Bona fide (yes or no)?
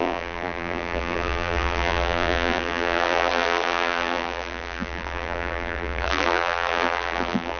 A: no